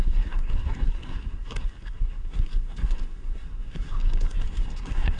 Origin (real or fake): fake